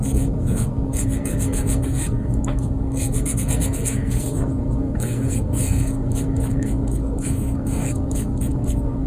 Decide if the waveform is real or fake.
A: fake